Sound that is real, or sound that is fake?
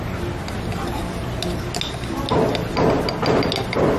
real